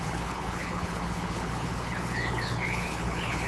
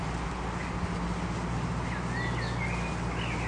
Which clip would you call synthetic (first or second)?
first